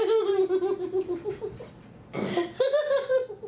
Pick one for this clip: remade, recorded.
remade